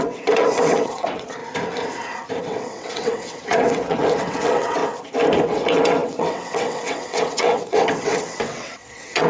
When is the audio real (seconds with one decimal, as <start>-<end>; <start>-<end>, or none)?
1.4-2.4; 4.8-5.4